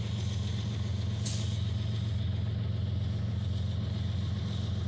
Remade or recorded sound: recorded